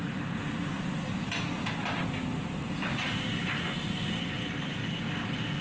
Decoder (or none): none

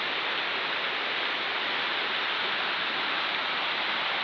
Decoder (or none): none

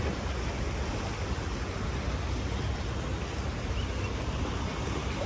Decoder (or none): none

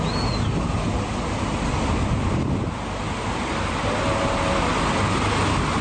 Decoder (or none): none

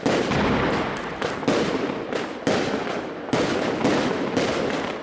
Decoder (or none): none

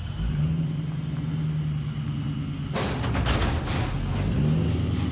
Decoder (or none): none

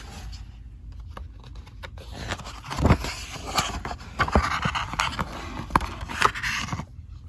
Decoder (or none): none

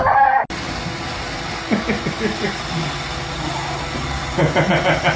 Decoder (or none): none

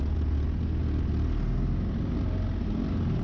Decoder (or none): none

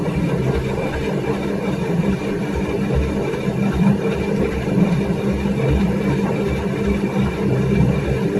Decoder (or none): none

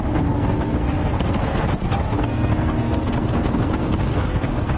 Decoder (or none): codec, SNAC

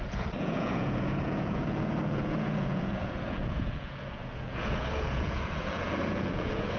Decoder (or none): vocoder, Vocos